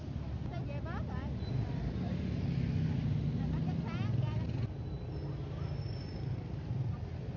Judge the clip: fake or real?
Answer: real